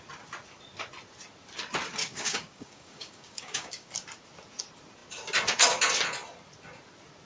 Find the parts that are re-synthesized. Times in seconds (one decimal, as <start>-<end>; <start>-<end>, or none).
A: 2.0-3.9